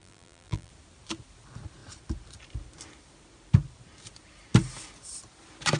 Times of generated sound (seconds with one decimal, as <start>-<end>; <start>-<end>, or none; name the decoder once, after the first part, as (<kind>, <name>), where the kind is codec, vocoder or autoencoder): 0.0-0.7 (vocoder, BigVGAN v2)